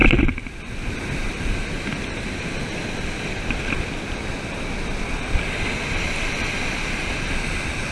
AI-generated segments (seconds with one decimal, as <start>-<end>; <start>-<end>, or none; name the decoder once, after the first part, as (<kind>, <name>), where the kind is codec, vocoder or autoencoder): none